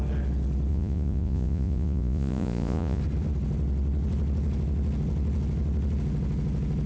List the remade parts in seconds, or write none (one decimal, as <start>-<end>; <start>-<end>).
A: 0.7-3.0